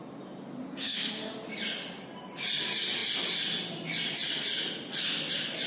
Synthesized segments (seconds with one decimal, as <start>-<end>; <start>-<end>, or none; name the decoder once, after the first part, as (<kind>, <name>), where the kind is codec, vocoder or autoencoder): 0.7-1.3 (codec, SNAC)